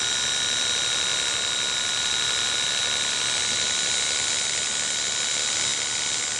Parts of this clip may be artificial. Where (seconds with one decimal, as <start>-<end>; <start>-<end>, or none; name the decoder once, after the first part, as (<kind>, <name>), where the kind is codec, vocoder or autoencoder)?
none